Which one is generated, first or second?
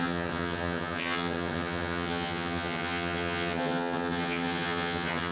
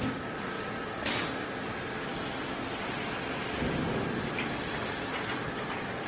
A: first